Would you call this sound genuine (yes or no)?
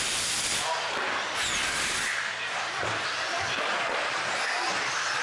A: yes